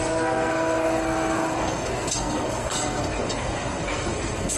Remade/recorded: remade